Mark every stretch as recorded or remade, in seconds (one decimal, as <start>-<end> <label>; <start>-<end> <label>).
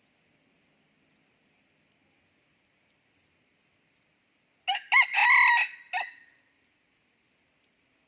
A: 0.0-8.1 recorded